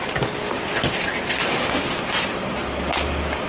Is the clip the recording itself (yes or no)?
yes